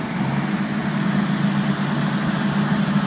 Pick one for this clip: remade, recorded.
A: recorded